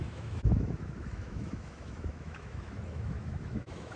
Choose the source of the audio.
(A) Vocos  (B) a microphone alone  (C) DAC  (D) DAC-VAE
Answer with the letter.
D